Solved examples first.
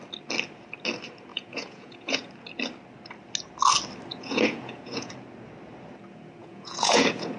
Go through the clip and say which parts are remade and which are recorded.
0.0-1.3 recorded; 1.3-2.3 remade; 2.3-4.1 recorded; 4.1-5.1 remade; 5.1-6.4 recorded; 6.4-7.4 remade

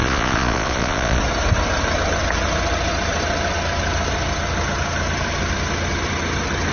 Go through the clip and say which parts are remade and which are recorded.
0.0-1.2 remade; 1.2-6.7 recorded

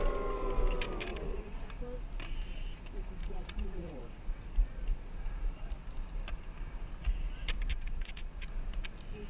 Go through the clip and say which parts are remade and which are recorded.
0.0-1.1 recorded; 1.1-1.7 remade; 1.7-3.2 recorded; 3.2-4.1 remade; 4.1-7.7 recorded; 7.7-8.5 remade; 8.5-9.3 recorded